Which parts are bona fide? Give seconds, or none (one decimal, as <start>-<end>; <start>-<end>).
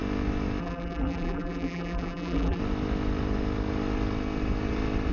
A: 0.0-0.6; 2.6-5.1